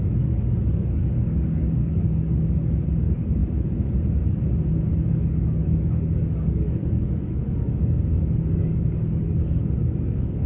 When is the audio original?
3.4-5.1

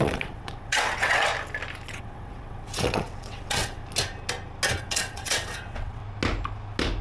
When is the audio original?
1.3-1.9; 3.8-4.8; 6.0-7.0

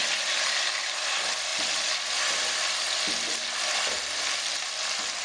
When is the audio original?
0.0-5.2

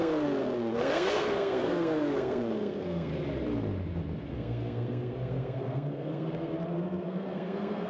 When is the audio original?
3.1-4.3